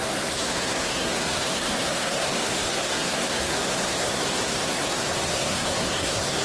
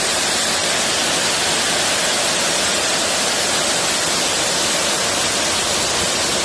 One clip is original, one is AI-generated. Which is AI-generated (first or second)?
first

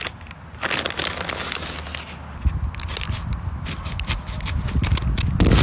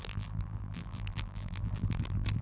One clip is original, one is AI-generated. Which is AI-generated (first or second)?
second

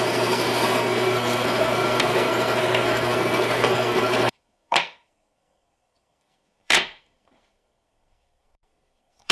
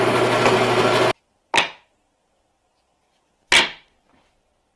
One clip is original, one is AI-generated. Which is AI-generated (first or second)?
first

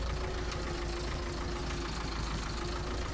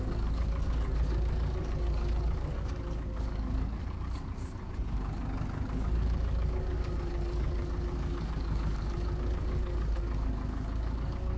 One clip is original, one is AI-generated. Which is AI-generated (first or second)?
second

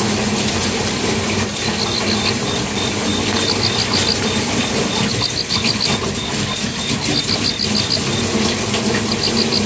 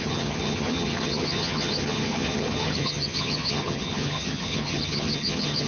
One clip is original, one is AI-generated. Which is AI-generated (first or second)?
second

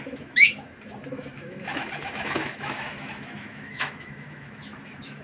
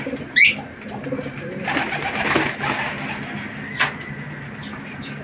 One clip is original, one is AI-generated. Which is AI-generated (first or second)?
first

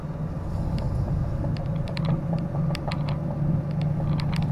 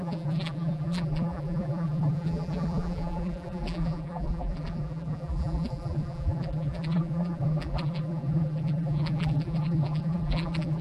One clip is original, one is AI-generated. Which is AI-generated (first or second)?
second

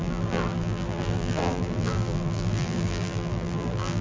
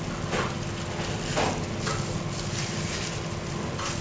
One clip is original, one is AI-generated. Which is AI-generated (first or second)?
first